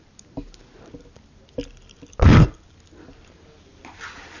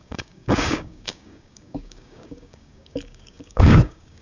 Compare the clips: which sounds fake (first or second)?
second